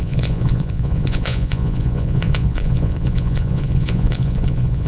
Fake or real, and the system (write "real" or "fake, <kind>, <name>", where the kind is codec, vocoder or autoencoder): fake, vocoder, Vocos